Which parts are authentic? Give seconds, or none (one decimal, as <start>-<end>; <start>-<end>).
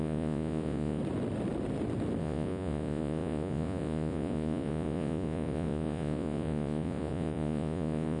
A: 1.0-2.2